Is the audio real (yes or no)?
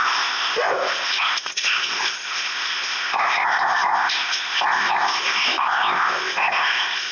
no